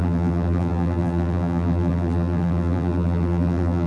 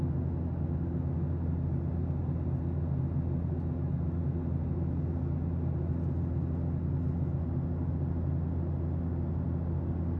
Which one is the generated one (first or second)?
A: first